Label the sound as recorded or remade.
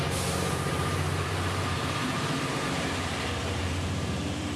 remade